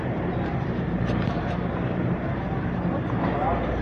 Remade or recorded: remade